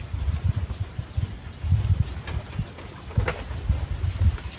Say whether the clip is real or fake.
real